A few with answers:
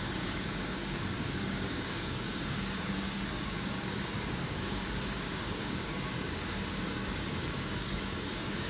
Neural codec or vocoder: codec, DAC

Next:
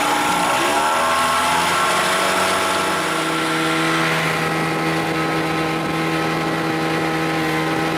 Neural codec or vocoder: none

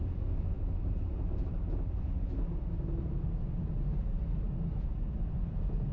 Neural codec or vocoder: none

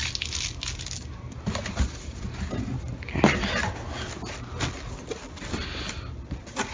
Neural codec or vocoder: none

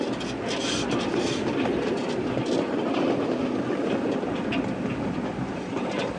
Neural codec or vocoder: none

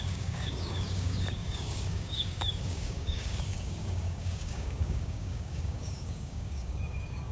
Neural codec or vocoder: codec, DAC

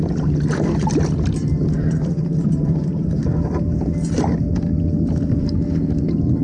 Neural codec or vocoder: none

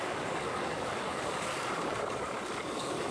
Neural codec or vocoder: codec, DAC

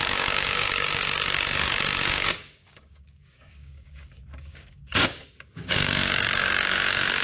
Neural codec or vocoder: codec, DAC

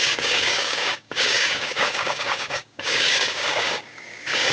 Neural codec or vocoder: codec, DAC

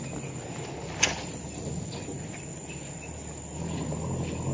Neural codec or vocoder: none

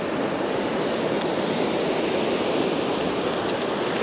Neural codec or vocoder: none